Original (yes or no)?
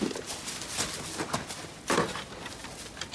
yes